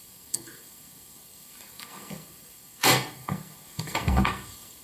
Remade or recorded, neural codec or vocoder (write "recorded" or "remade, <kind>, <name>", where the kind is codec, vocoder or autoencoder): remade, codec, SNAC